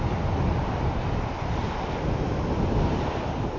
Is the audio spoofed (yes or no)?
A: no